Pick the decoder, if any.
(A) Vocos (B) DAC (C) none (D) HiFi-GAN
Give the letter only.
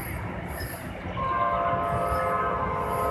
C